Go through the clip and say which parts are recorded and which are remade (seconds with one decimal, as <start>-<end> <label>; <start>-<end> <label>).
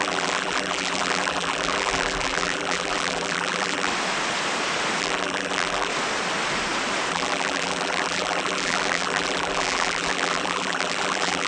0.0-3.9 remade; 3.9-5.0 recorded; 5.0-5.9 remade; 5.9-7.1 recorded; 7.1-11.5 remade